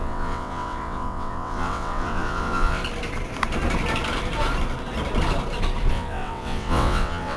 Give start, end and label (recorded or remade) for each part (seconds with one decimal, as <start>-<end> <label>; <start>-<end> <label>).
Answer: 0.0-2.8 remade; 2.8-5.9 recorded; 5.9-7.4 remade